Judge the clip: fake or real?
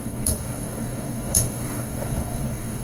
fake